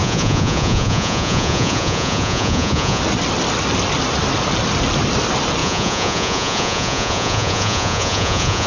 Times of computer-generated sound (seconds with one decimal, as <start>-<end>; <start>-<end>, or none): 0.0-3.0; 5.6-8.7